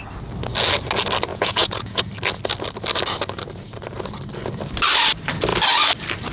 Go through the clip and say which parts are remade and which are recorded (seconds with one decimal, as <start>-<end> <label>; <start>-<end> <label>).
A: 0.0-1.3 recorded; 1.3-2.0 remade; 2.0-6.3 recorded